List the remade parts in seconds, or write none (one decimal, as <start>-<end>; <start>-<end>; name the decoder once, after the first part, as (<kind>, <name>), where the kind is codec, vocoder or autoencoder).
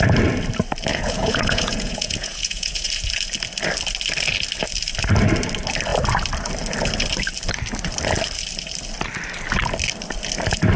0.9-2.9 (vocoder, Vocos)